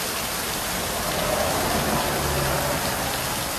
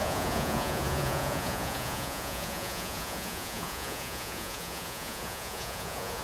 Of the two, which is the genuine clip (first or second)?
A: first